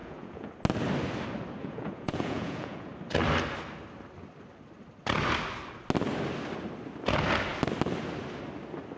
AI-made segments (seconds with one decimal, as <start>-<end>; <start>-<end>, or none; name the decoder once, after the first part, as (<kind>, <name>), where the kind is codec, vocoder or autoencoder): 0.0-0.5 (vocoder, Vocos); 1.6-2.9

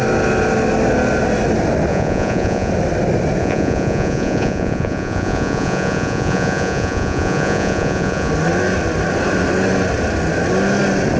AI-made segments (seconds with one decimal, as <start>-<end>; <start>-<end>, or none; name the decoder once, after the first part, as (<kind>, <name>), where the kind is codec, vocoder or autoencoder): 1.9-2.7 (vocoder, Vocos); 3.4-8.3

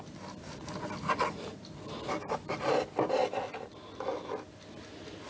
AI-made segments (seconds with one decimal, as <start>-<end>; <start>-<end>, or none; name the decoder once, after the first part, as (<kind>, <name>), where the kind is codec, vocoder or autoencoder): none

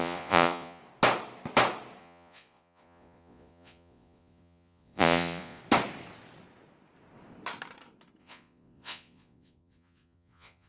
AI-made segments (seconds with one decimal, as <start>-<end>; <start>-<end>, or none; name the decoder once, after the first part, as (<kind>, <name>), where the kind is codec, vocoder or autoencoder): 0.0-0.8 (vocoder, Vocos); 2.0-5.6; 8.2-10.7

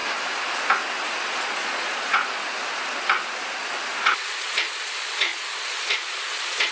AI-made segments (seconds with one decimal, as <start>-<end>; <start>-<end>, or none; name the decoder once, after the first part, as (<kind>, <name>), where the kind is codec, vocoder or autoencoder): 1.3-2.4 (vocoder, Vocos); 4.0-6.7

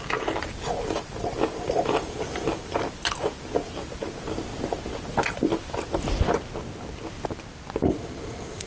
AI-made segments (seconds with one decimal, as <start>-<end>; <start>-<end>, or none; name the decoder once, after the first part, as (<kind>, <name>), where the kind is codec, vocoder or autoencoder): none

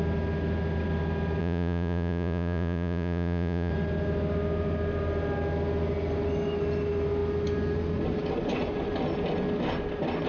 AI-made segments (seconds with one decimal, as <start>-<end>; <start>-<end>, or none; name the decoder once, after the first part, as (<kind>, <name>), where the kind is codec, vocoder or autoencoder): 1.4-3.7 (vocoder, Vocos)

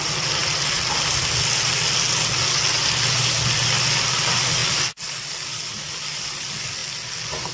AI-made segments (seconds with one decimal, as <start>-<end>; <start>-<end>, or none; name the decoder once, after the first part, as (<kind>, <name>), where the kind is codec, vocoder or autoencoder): none